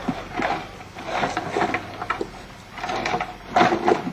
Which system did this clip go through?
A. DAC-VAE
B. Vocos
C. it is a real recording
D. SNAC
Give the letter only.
C